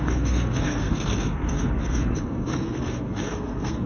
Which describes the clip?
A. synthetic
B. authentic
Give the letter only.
A